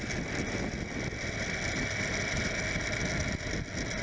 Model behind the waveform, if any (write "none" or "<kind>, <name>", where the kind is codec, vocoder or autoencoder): none